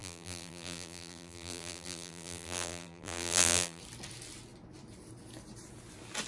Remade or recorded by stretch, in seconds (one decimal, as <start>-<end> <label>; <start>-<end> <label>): 0.0-3.8 remade; 3.8-6.3 recorded